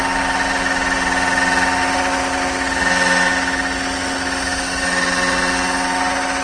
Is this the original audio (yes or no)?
yes